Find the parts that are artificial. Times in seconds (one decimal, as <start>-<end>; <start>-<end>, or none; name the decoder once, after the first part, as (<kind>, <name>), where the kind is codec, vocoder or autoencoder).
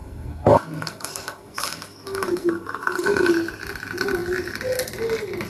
0.0-3.3 (codec, SNAC)